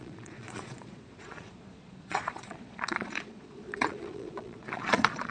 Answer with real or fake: fake